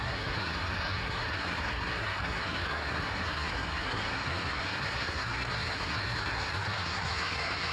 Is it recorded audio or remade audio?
remade